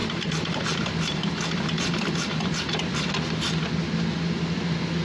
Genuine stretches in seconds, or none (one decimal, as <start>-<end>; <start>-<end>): 2.5-2.9; 3.6-5.0